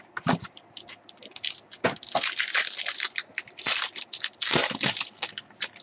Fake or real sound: real